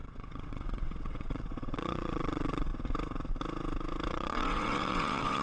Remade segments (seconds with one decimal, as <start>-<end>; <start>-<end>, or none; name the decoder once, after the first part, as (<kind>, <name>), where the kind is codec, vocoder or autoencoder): 0.0-2.7 (vocoder, WaveNeXt); 4.1-5.4